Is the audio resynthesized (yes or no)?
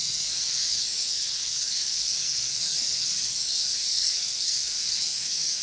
yes